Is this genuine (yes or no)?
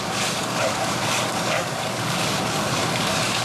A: no